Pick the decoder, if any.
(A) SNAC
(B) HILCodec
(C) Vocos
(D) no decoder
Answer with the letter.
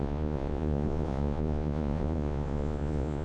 C